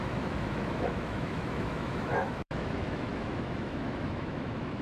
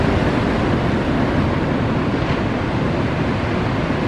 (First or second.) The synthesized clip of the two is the first